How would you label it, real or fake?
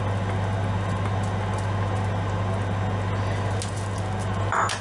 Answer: real